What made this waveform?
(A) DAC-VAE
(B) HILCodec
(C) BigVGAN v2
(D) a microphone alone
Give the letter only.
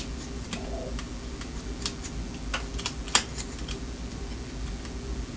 D